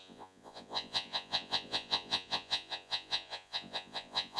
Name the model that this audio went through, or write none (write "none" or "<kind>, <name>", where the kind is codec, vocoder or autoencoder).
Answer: vocoder, Vocos